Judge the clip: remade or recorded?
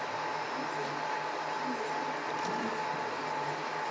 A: recorded